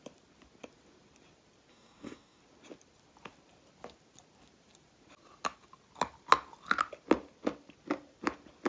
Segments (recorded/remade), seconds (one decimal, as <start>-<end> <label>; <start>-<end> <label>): 0.0-1.7 recorded; 1.7-2.4 remade; 2.4-8.7 recorded